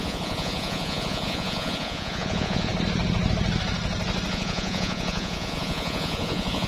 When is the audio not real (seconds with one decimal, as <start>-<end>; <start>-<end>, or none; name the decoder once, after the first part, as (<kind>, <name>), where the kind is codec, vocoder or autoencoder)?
0.0-2.7 (vocoder, Vocos); 4.3-6.7

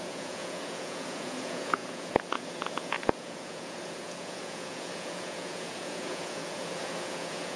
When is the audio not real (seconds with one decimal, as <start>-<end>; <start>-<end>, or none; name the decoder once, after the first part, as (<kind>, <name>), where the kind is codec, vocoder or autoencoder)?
0.0-7.6 (vocoder, Vocos)

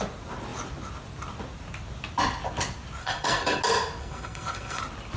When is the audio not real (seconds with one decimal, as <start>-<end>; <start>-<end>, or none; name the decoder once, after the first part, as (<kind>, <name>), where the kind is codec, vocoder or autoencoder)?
3.0-3.6 (codec, SNAC); 4.0-4.8

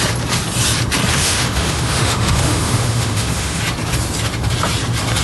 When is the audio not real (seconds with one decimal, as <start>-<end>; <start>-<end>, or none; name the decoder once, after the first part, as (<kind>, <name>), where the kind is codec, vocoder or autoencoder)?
1.1-3.6 (autoencoder, DAC-VAE)

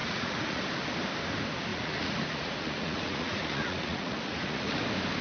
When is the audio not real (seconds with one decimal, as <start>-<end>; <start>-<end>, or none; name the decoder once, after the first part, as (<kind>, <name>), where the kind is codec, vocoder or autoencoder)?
0.0-0.6 (vocoder, Vocos); 1.7-4.8

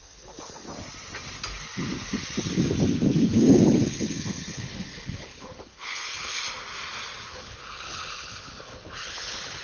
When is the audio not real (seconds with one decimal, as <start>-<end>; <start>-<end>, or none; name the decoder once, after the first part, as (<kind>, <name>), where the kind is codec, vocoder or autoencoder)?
0.0-0.7 (codec, HILCodec); 2.9-6.4; 7.3-9.6

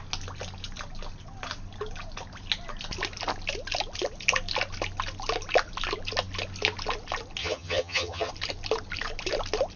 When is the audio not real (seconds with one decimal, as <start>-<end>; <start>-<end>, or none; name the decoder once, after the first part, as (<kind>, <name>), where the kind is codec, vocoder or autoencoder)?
7.4-8.3 (vocoder, HiFi-GAN)